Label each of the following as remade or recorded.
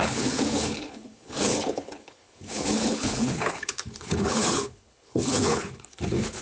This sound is remade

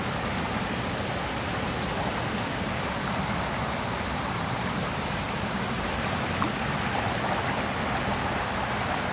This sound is recorded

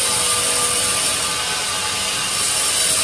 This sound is recorded